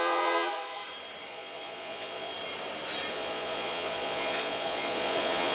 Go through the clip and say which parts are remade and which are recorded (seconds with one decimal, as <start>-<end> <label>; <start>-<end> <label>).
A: 0.0-0.8 remade; 0.8-1.3 recorded; 1.3-2.3 remade; 2.3-3.1 recorded; 3.1-5.5 remade